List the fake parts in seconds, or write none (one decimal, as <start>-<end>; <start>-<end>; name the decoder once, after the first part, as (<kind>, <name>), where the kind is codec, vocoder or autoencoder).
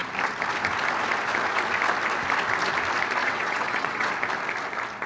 3.2-4.1 (vocoder, WaveNeXt)